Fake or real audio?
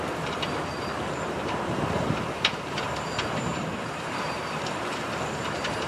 fake